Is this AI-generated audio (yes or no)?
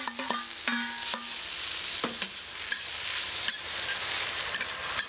no